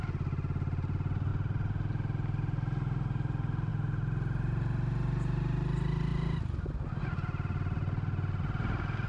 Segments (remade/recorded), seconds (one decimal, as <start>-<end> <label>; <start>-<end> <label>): 0.0-9.1 recorded